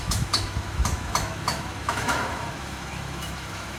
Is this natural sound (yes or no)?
no